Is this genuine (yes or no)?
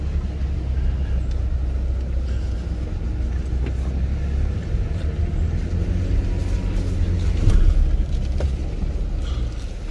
yes